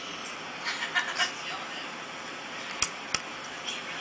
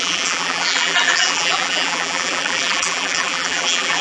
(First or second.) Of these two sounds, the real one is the first